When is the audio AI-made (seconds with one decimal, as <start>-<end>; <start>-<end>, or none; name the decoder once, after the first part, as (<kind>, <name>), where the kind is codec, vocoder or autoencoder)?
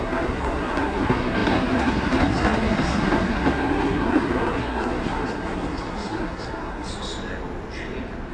0.0-6.9 (codec, SNAC)